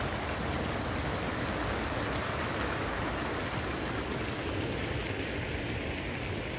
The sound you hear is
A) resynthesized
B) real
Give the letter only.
B